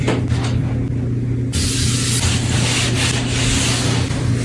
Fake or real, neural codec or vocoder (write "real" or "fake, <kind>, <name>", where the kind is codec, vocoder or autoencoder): real